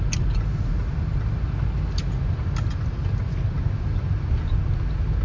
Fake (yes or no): no